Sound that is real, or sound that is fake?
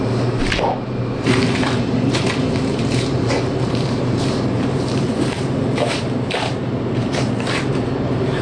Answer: fake